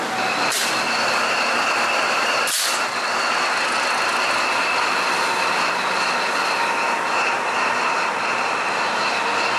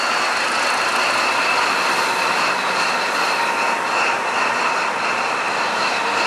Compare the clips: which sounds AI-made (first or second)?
second